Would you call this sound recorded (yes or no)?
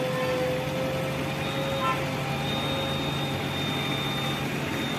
yes